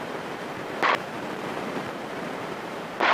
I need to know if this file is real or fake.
fake